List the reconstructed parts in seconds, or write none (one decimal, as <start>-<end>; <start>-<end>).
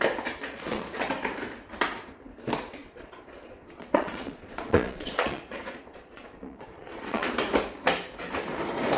0.4-1.1; 2.8-7.3